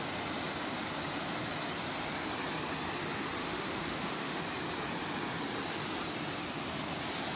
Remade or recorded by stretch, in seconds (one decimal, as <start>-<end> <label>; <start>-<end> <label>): 0.0-3.4 recorded; 3.4-4.4 remade; 4.4-7.4 recorded